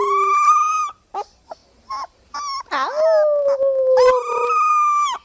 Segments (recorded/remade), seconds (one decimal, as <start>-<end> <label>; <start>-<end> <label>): 0.0-5.2 recorded